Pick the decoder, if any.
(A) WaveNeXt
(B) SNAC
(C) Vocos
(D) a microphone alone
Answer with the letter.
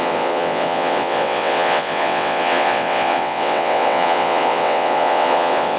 A